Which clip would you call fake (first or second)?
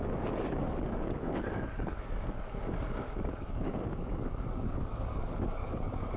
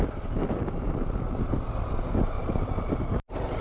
first